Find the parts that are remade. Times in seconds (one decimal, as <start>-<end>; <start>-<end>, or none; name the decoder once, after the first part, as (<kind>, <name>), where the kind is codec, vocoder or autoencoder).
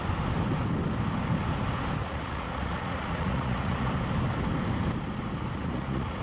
2.0-3.9 (vocoder, Vocos); 5.6-6.2